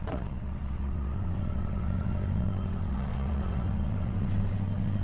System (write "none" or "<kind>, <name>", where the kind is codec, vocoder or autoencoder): vocoder, WaveNeXt